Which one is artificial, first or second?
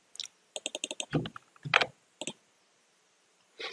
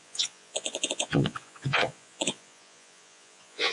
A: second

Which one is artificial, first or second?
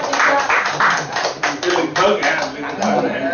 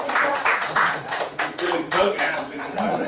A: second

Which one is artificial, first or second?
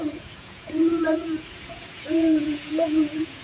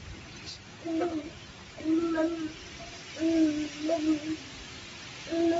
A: first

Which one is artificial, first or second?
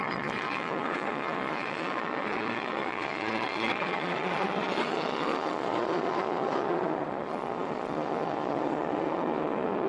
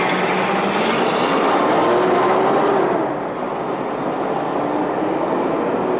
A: first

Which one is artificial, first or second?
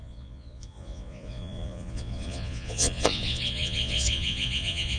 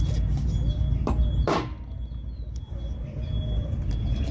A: first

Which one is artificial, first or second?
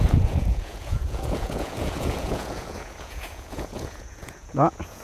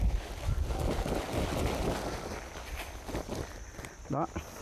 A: first